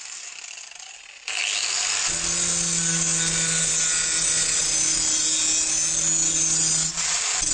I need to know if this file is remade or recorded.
recorded